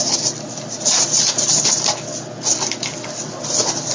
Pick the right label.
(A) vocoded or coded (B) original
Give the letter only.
B